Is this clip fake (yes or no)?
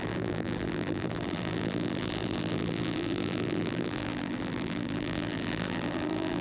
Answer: yes